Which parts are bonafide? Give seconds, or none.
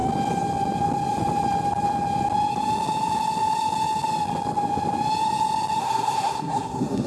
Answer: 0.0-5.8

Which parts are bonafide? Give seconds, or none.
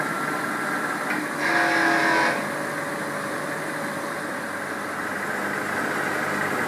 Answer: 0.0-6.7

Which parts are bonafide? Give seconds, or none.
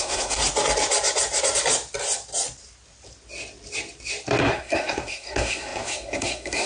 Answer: 0.4-4.4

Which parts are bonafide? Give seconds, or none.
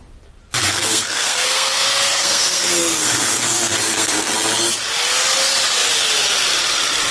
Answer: 0.0-0.7; 4.3-7.1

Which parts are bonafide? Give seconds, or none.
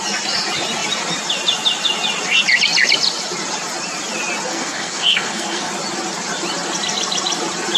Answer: 0.0-4.5; 5.7-7.8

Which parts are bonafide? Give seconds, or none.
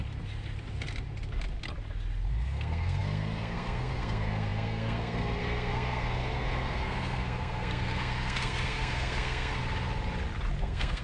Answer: 0.0-2.3; 9.6-10.6